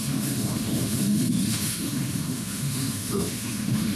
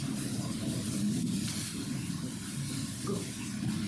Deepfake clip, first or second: first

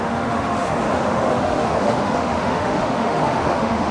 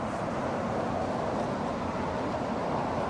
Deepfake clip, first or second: first